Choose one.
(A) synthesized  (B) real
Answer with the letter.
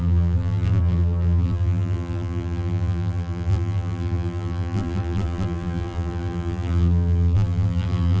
A